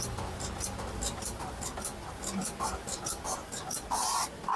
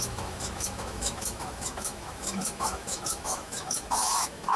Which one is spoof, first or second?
second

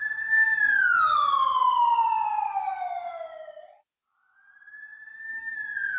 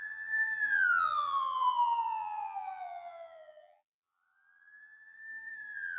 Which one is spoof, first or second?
second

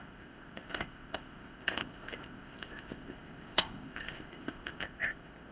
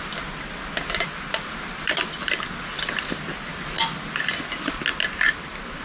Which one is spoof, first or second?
first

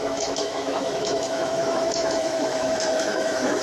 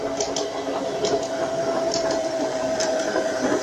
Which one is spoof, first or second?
first